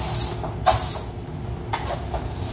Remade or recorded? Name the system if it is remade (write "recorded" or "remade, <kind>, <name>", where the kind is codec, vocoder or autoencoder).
recorded